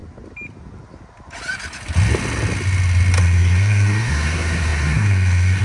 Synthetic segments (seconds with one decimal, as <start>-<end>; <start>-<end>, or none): 3.2-5.6